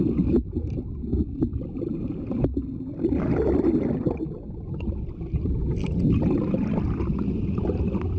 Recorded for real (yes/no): yes